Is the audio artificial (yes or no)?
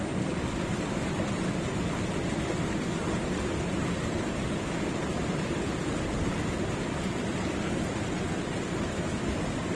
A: no